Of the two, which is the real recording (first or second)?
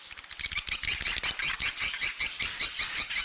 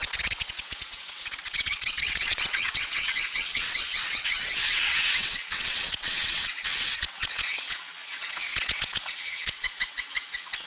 first